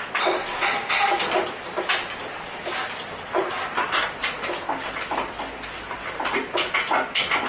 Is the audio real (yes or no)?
yes